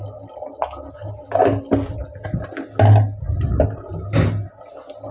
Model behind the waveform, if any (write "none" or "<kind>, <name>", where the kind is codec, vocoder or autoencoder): none